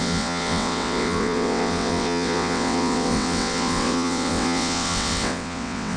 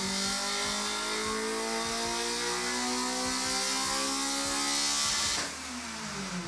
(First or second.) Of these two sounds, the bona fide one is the second